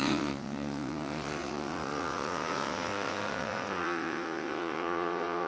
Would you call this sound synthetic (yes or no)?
yes